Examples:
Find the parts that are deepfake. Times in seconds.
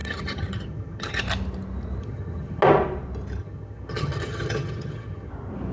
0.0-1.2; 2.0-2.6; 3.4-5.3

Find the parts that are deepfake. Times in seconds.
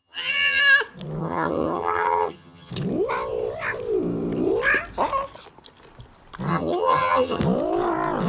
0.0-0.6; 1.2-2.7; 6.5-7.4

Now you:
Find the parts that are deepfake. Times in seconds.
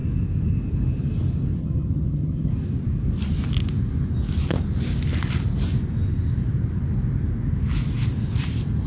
1.6-2.5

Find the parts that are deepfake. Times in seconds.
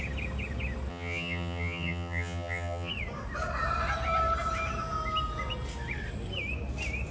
0.9-2.9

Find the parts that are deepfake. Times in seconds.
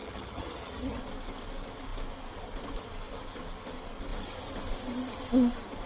0.0-1.0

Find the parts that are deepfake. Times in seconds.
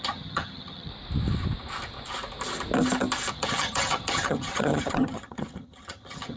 0.0-0.9; 3.3-6.4